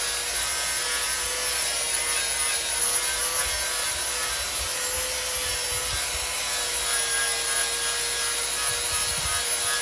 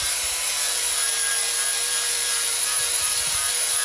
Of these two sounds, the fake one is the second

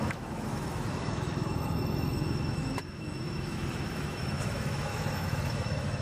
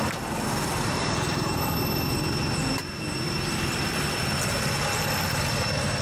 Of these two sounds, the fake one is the first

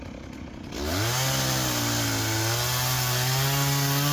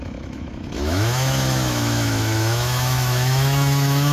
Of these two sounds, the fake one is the second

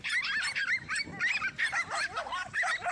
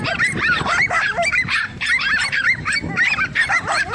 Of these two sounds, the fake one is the second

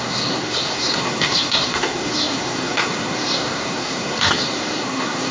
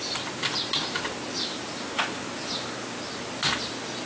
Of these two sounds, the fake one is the first